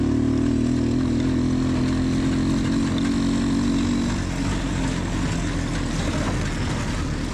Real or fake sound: real